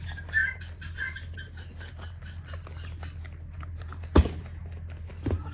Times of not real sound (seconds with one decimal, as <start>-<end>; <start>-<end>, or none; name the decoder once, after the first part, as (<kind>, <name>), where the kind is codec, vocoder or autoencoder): none